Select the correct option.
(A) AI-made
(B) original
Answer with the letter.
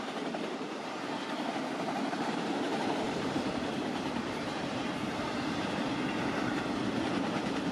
A